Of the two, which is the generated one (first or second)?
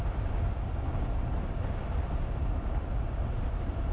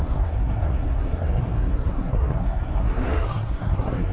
second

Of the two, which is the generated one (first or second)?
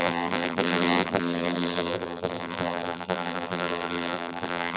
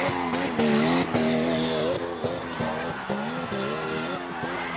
first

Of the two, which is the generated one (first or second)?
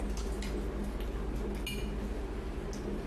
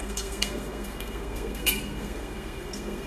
second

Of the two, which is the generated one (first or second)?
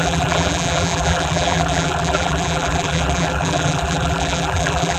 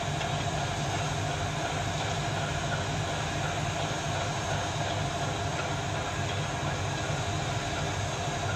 first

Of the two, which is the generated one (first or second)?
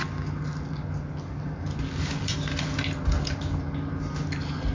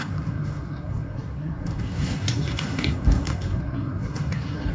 second